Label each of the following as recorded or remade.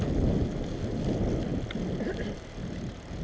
recorded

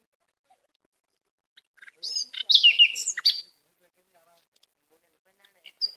recorded